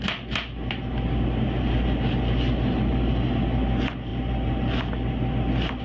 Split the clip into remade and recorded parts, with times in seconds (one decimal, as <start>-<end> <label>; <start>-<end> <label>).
0.0-5.8 recorded